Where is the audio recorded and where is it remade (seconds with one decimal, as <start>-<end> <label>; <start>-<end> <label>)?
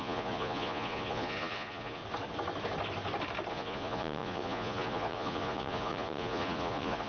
0.0-2.0 remade; 2.0-3.5 recorded; 3.5-7.1 remade